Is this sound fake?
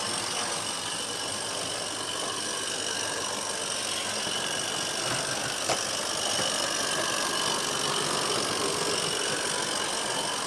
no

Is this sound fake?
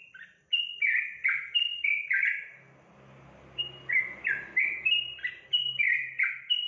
no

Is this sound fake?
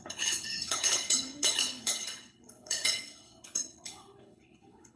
yes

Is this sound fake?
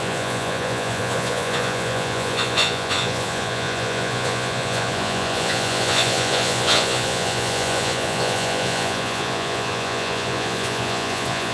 yes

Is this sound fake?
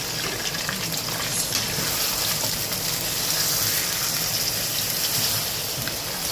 no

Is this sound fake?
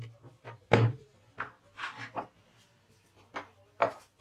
no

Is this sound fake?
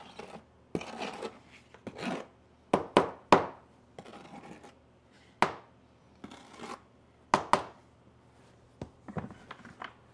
no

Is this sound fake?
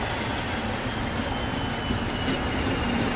no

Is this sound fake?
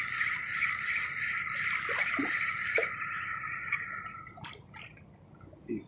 no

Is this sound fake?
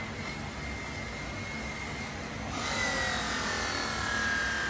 no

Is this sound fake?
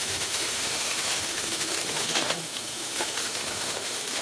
yes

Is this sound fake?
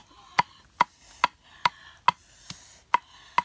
no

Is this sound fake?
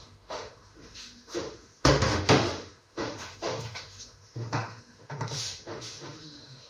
yes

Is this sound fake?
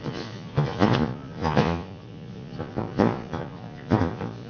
yes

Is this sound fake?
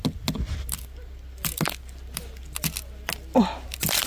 no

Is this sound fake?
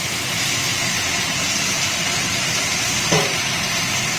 no